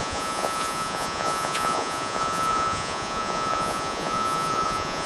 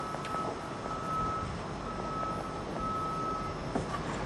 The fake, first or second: first